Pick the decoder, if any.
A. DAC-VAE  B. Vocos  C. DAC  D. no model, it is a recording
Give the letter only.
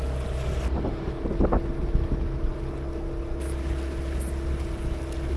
D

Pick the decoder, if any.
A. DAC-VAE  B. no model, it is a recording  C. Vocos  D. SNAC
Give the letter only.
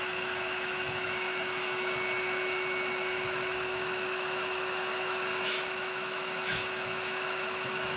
A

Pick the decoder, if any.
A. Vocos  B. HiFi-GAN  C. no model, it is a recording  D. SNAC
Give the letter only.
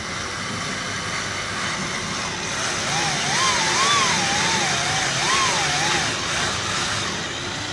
C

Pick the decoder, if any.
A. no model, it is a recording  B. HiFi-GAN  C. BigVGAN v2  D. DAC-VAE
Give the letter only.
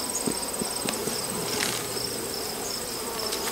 C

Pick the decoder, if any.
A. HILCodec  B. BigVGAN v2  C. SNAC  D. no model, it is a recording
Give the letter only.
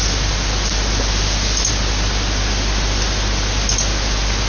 D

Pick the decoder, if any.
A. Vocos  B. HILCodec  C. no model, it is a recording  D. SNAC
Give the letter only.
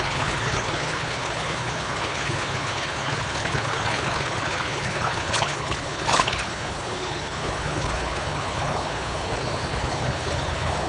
B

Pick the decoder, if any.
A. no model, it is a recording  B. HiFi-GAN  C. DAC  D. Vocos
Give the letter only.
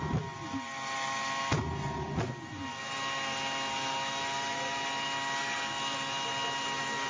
A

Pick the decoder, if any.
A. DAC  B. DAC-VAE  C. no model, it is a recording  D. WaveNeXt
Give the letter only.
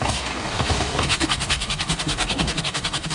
A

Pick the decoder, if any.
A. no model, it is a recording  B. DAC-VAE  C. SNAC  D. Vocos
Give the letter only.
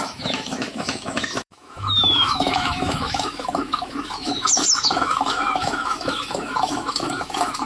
B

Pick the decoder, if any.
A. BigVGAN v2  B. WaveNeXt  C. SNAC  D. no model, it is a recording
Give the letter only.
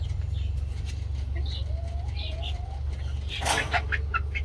D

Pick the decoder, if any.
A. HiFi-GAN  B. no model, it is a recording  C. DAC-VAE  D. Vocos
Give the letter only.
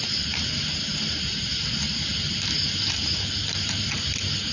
B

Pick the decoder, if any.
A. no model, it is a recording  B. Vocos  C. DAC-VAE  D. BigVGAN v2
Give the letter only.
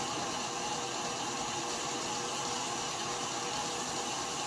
A